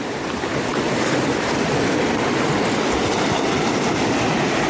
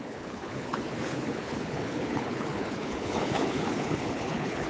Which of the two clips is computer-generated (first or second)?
second